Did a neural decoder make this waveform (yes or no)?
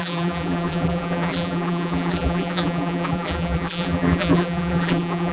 yes